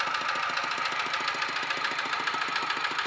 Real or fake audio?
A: real